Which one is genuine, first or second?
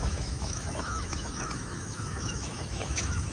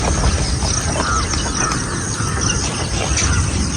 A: second